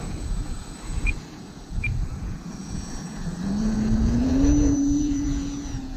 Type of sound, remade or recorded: remade